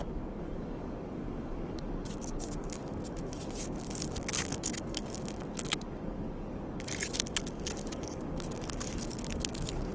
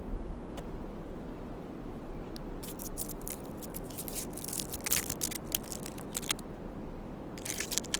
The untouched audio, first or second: second